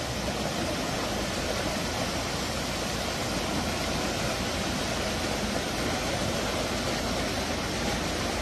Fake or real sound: real